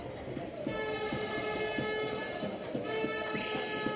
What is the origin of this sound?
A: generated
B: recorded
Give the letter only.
B